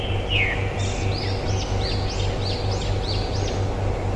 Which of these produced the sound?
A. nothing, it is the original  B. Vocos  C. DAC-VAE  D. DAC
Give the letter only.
A